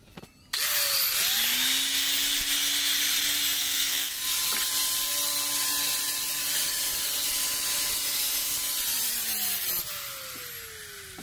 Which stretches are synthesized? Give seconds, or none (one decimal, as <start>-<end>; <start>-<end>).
3.6-4.2